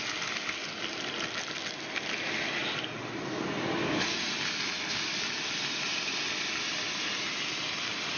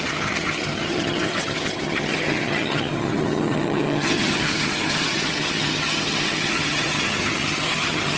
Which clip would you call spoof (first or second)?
second